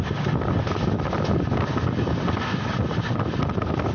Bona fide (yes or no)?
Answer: yes